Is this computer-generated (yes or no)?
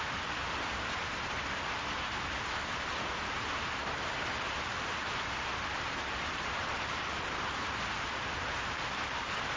yes